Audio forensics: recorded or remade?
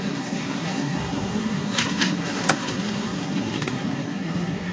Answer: remade